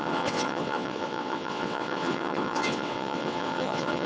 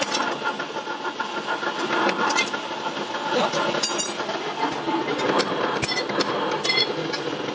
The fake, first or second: first